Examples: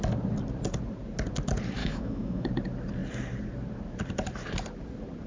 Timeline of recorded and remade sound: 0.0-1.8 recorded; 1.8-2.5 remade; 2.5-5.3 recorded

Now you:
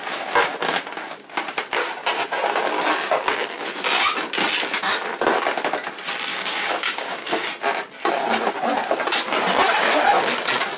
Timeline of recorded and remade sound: 0.0-6.3 recorded; 6.3-7.5 remade; 7.5-10.8 recorded